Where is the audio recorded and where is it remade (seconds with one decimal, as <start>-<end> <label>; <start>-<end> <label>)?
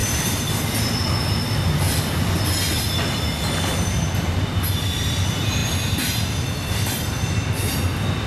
0.0-8.3 recorded